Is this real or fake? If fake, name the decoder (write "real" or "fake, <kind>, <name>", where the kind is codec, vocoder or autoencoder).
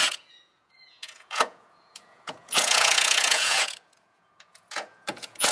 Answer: fake, vocoder, Vocos